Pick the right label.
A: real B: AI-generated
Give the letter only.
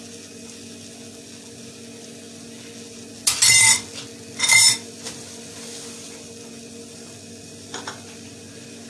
A